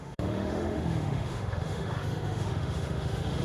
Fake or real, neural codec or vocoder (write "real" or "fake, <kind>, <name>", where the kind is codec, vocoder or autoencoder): fake, autoencoder, DAC-VAE